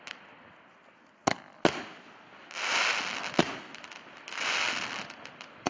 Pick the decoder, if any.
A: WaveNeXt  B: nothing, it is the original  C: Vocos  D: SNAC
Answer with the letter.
B